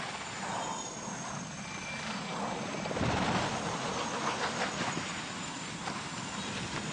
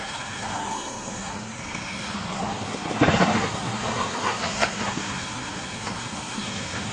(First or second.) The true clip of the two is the first